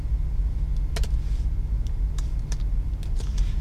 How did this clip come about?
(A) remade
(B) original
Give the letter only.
B